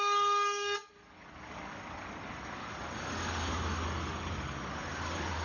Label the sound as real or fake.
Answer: fake